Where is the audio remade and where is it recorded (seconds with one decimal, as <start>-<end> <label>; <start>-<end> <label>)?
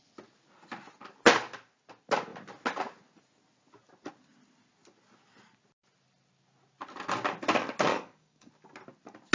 0.0-7.9 recorded; 7.9-8.5 remade; 8.5-9.3 recorded